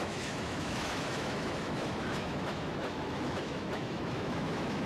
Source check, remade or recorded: remade